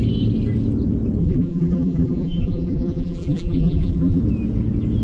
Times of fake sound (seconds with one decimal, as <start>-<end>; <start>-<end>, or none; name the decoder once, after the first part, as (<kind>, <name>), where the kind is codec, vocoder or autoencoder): 1.2-4.2 (vocoder, BigVGAN v2)